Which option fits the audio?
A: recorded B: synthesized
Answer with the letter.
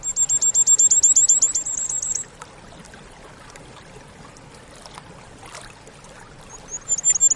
A